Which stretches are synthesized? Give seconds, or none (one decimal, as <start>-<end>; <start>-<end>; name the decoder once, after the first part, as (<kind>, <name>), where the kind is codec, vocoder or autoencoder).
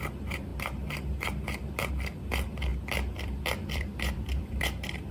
0.0-2.7 (vocoder, BigVGAN v2); 3.2-5.1